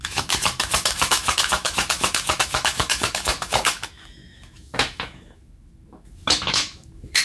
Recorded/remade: remade